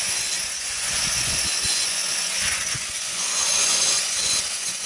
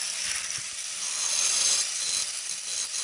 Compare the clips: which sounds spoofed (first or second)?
first